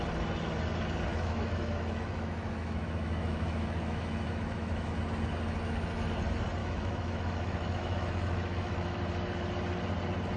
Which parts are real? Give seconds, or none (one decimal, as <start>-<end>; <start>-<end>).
0.0-1.1; 5.0-6.6; 9.0-10.4